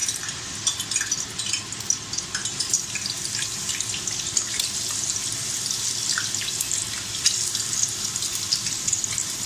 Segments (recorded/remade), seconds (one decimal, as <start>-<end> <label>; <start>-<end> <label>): 0.0-9.5 recorded